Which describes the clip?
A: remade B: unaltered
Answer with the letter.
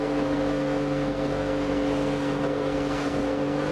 A